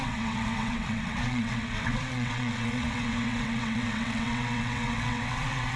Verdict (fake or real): fake